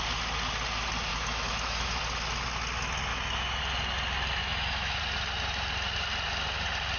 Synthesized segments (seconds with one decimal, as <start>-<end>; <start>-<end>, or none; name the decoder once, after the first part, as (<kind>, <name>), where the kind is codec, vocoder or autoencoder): 1.1-2.0 (autoencoder, DAC-VAE); 3.1-3.6; 4.4-5.0